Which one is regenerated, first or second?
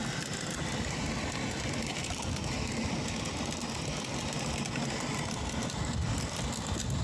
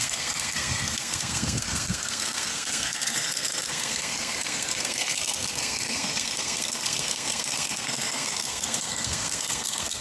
second